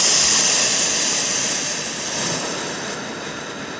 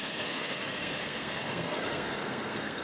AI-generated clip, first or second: second